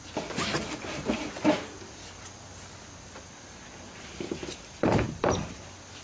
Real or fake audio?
fake